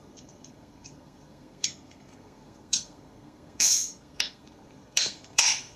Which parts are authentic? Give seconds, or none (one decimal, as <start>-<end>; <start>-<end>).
none